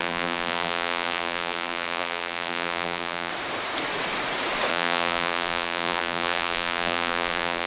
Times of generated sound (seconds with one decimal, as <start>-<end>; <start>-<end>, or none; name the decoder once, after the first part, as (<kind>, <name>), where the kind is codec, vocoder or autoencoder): 0.0-3.3 (vocoder, BigVGAN v2); 4.7-7.7

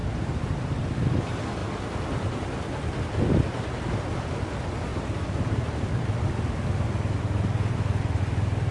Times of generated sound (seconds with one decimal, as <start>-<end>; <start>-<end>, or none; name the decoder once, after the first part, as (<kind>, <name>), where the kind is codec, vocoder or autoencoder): 1.6-3.9 (vocoder, BigVGAN v2); 4.9-8.2

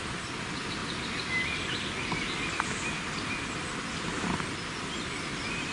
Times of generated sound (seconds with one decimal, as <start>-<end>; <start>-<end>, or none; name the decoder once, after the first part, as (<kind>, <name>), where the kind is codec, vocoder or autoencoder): none